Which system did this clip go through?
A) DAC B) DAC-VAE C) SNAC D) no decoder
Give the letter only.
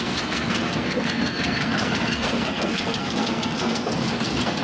C